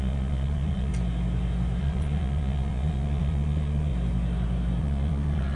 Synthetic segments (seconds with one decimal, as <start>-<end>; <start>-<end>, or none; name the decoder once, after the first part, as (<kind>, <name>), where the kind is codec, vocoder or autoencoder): 0.0-0.9 (vocoder, Vocos); 1.8-3.9; 4.8-5.6